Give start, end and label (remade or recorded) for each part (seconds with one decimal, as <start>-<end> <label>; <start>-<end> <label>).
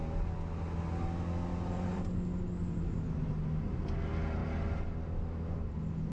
0.0-1.5 recorded; 1.5-2.0 remade; 2.0-6.1 recorded